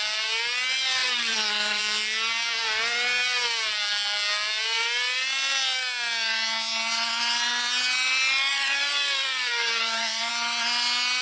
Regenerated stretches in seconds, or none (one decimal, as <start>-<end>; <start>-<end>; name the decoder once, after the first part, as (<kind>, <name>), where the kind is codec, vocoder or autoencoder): 1.0-1.8 (vocoder, BigVGAN v2); 8.5-10.3

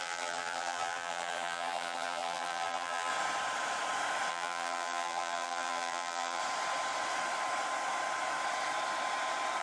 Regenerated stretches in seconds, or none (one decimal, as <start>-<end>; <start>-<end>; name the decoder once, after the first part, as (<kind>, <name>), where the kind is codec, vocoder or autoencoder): 0.0-3.1 (vocoder, BigVGAN v2); 4.3-6.4

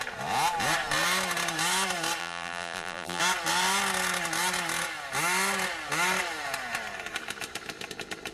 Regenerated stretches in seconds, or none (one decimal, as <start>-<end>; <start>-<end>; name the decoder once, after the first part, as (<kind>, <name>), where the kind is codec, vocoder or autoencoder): 2.2-3.2 (vocoder, BigVGAN v2)

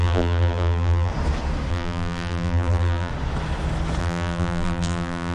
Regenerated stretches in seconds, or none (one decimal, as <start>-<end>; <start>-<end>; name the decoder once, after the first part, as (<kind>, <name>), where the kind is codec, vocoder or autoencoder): 0.0-1.1 (vocoder, BigVGAN v2); 1.7-3.1; 4.0-5.3

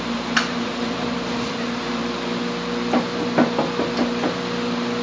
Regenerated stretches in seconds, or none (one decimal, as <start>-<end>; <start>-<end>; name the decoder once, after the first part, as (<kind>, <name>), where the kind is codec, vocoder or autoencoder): 0.0-2.0 (vocoder, BigVGAN v2)

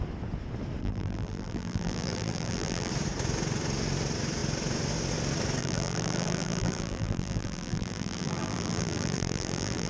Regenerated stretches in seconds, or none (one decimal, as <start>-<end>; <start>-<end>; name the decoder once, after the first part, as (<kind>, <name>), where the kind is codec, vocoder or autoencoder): 0.8-2.9 (vocoder, BigVGAN v2); 5.6-9.9

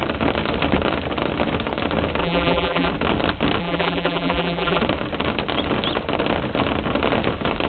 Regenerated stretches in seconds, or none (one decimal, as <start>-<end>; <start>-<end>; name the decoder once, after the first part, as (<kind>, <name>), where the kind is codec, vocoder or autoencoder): 2.2-2.9 (vocoder, BigVGAN v2); 3.6-4.8

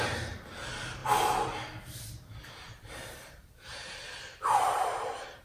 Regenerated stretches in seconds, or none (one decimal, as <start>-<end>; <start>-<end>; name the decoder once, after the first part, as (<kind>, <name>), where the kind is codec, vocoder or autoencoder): 3.4-5.4 (vocoder, BigVGAN v2)